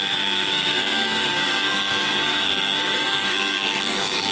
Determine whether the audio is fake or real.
fake